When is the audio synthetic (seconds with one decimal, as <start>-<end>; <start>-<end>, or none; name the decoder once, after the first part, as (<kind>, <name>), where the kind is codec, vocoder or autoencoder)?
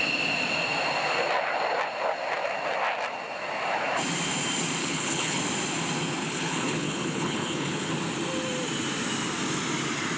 4.8-5.4 (codec, HILCodec); 6.2-7.9